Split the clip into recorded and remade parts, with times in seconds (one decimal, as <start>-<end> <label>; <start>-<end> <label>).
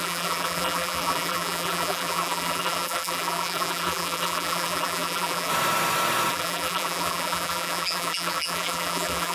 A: 0.0-5.5 remade; 5.5-6.3 recorded; 6.3-9.3 remade